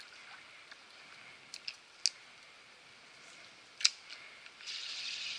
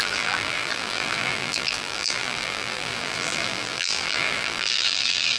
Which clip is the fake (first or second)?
second